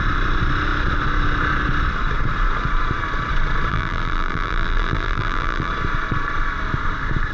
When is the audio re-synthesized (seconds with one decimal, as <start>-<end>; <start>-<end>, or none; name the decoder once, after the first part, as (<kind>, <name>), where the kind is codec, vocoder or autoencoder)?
3.7-5.7 (vocoder, BigVGAN v2)